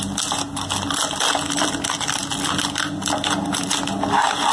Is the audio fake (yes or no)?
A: no